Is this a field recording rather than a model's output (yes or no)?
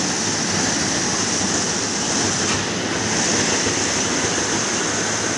yes